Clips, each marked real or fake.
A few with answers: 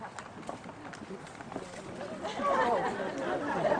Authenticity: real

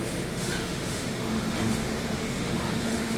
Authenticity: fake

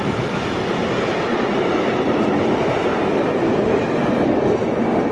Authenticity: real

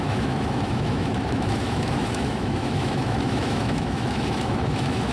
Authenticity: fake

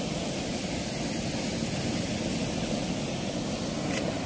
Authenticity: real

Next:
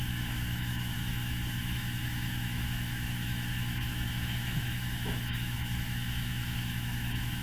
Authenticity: fake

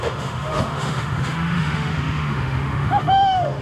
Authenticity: fake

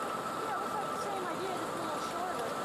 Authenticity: real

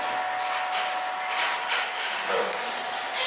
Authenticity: real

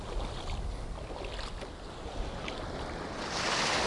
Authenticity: real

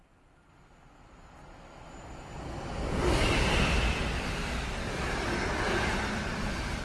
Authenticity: real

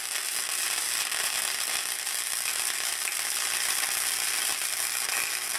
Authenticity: real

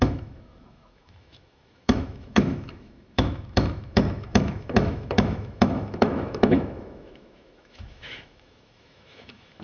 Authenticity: fake